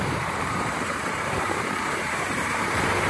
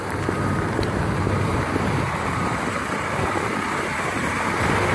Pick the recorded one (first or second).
second